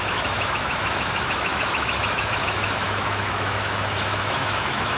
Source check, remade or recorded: remade